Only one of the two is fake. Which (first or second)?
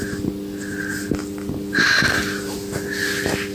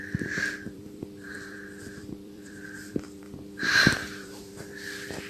second